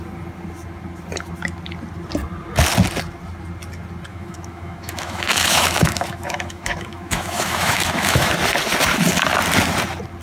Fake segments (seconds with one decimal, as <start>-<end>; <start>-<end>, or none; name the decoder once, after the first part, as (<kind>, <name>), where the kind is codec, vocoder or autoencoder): 4.1-8.3 (autoencoder, DAC-VAE)